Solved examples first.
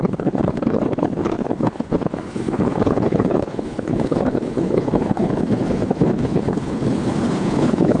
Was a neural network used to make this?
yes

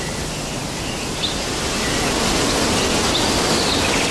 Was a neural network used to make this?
no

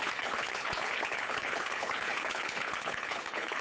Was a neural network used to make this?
yes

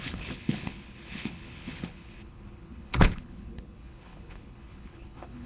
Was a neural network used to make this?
yes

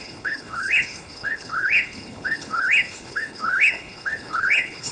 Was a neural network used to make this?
yes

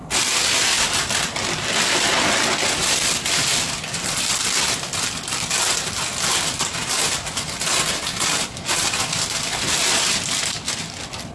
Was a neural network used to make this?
no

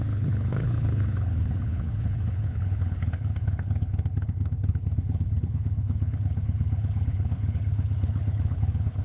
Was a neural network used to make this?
yes